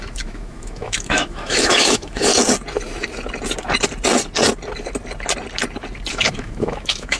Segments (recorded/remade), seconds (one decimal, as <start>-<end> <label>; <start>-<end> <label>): 0.0-2.3 remade; 2.3-6.1 recorded; 6.1-7.2 remade